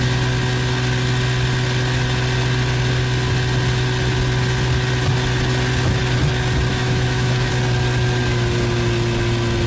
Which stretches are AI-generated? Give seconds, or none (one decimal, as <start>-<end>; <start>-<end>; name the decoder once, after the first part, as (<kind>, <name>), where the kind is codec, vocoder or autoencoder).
6.7-7.5 (autoencoder, DAC-VAE)